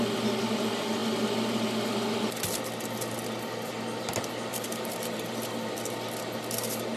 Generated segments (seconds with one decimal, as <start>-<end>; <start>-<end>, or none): 4.5-5.3